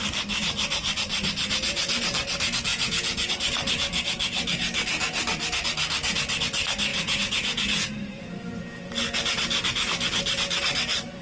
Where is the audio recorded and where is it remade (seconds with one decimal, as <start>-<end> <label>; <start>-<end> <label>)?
0.0-2.7 recorded; 2.7-3.3 remade; 3.3-6.9 recorded; 6.9-8.9 remade; 8.9-11.2 recorded